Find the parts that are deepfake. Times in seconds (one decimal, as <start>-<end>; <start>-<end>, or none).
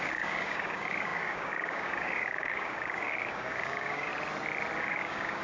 0.0-4.1; 4.8-5.4